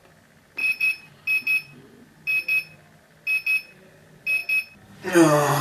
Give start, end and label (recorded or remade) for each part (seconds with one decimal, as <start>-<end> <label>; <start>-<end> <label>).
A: 0.0-0.6 recorded; 0.6-1.1 remade; 1.1-5.6 recorded